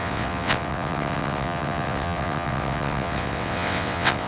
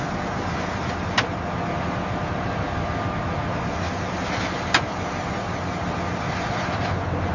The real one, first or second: second